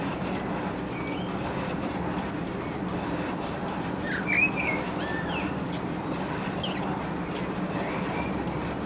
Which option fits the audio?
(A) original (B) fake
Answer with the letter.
A